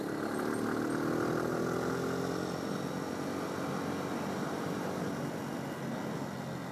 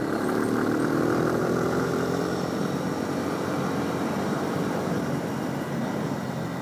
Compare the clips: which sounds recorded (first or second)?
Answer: first